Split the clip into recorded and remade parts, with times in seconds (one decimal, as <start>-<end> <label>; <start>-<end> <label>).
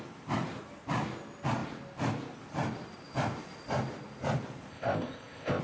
0.0-4.7 recorded; 4.7-5.6 remade